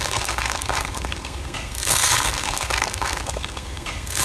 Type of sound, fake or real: fake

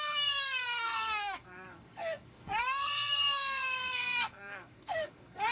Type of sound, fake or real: fake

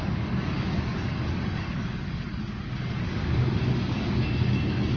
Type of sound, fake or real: fake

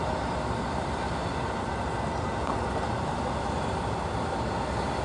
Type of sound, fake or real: real